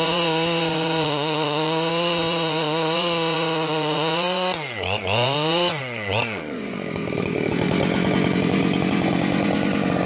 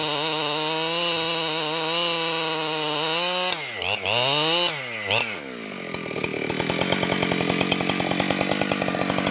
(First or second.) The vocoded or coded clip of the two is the first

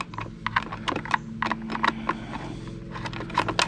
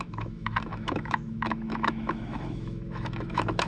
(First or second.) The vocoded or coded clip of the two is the second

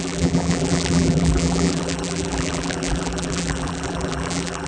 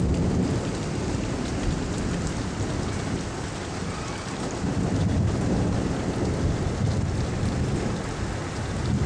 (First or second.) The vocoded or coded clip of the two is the first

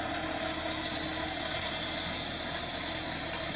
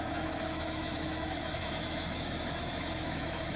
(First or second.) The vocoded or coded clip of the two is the second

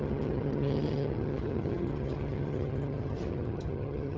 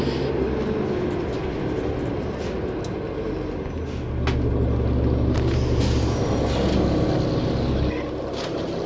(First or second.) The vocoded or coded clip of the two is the first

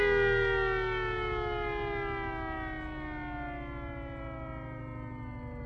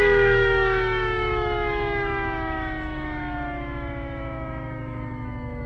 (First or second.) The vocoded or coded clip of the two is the second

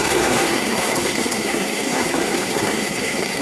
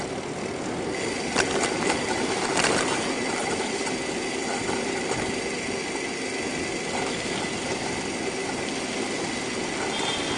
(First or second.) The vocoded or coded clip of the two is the first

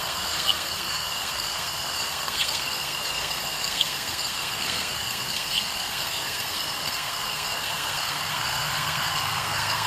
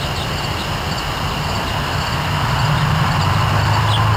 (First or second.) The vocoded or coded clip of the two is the first